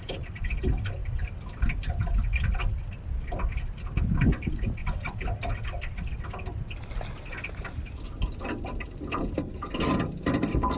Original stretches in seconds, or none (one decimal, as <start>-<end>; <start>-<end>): 4.8-9.8